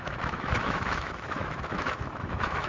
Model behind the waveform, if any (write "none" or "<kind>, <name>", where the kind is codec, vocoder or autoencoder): autoencoder, DAC-VAE